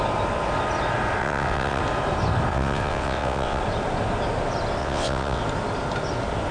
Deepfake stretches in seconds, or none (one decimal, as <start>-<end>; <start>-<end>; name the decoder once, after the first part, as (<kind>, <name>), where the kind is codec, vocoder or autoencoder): 1.2-1.8 (vocoder, WaveNeXt); 2.5-3.6; 4.8-5.4